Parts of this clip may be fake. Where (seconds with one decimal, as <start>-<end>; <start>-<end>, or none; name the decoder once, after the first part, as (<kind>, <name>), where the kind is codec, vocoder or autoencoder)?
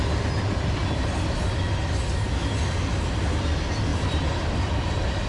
3.9-4.7 (vocoder, BigVGAN v2)